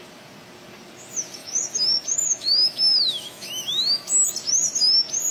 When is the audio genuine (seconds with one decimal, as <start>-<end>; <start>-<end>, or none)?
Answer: 0.0-1.4; 4.2-5.3

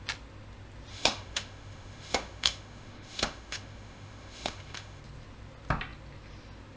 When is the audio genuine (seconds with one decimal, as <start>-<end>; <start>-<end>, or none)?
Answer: 0.0-0.9; 5.0-6.8

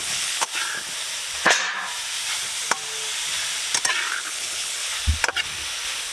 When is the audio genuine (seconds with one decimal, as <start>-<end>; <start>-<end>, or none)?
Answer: 0.5-4.1; 4.9-6.1

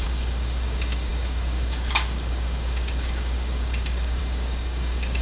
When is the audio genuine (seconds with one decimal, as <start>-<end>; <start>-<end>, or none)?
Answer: none

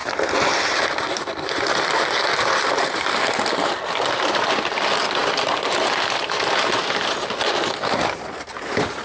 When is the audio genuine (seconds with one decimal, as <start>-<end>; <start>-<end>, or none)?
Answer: 0.0-9.0

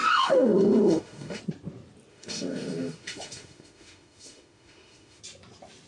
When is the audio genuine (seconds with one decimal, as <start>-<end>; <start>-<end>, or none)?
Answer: 1.4-2.1; 5.2-5.9